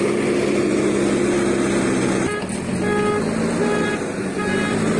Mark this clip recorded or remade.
recorded